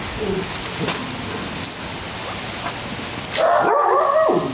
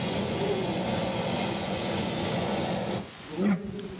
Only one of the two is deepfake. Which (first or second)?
second